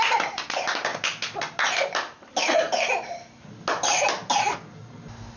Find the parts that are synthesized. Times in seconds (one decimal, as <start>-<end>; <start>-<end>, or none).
none